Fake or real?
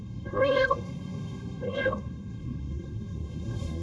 fake